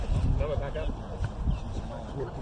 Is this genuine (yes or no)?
yes